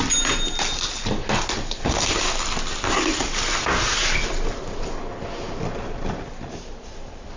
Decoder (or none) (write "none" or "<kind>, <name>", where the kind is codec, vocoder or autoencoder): none